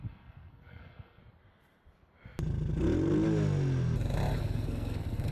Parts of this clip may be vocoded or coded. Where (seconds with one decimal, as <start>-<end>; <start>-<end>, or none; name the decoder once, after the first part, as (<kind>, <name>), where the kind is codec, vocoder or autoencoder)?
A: 0.0-1.2 (codec, SNAC); 4.4-5.3